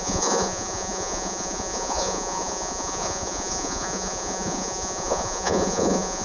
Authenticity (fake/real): fake